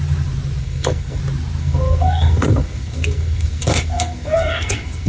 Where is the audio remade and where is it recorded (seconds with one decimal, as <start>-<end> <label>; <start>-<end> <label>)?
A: 0.0-0.6 recorded; 0.6-1.2 remade; 1.2-1.6 recorded; 1.6-5.1 remade